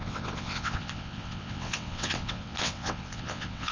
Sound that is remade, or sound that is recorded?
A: remade